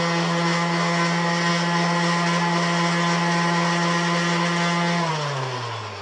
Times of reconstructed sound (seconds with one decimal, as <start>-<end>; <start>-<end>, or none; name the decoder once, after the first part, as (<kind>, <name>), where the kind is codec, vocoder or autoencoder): none